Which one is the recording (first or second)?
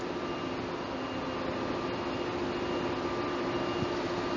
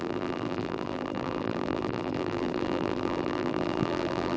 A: first